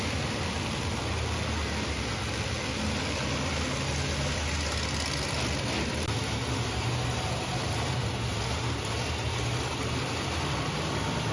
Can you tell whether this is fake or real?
real